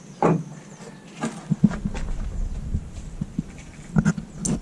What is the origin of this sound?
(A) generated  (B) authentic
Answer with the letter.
B